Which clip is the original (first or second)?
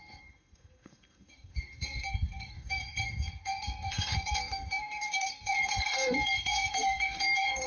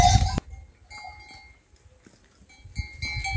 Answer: second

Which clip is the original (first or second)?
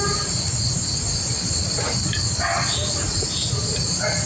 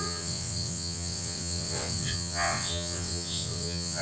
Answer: first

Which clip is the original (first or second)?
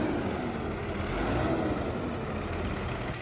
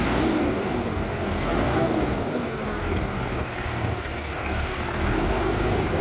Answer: first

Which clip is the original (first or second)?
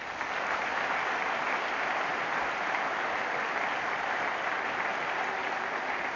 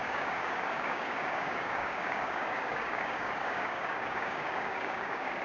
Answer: first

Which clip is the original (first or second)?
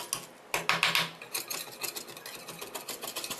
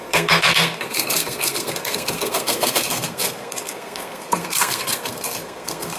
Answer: first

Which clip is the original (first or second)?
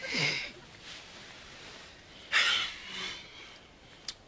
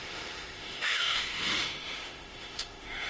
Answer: first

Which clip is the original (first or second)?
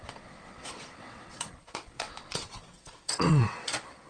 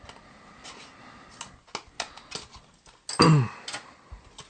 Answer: second